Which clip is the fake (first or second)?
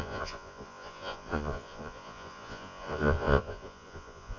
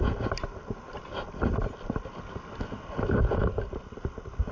first